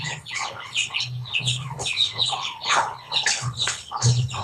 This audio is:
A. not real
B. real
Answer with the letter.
A